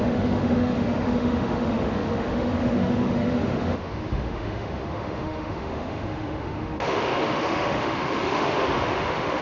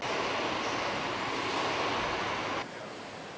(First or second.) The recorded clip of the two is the second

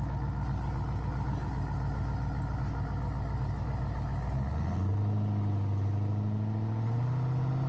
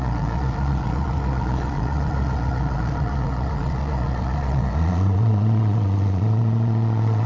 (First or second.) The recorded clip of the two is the first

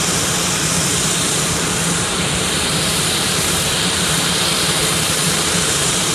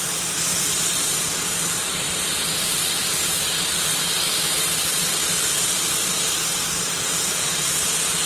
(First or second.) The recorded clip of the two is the second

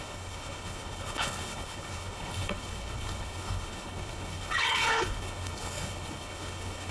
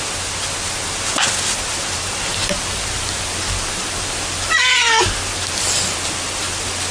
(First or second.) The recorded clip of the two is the second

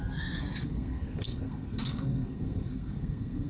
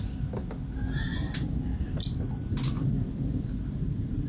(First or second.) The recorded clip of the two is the second